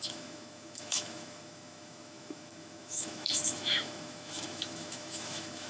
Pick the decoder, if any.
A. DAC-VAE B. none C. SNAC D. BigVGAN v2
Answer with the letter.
A